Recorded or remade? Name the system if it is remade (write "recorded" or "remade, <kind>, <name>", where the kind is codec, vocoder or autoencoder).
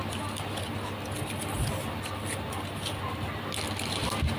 recorded